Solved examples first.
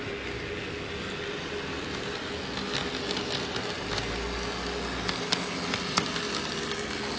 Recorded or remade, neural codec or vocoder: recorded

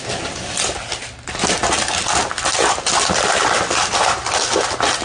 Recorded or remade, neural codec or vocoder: recorded